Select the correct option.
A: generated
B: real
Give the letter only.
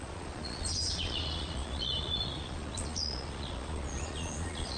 A